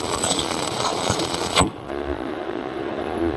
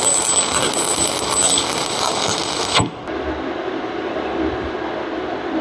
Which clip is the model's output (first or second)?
first